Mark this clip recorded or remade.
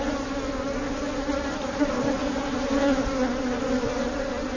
recorded